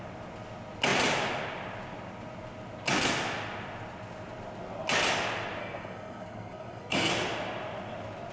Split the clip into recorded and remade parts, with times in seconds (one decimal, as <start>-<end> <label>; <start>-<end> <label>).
0.0-5.6 recorded; 5.6-7.1 remade; 7.1-8.3 recorded